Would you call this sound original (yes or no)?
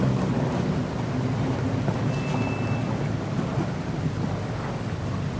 yes